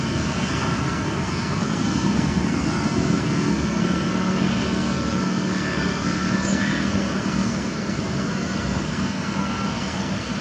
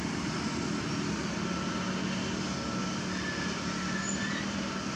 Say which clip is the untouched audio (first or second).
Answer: second